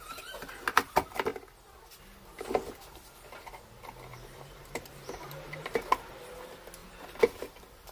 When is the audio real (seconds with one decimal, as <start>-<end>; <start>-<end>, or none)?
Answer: 0.0-4.1; 6.1-6.8